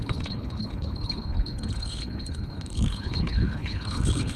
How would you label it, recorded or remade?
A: remade